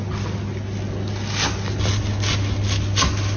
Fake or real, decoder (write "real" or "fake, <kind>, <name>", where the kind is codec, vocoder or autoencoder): real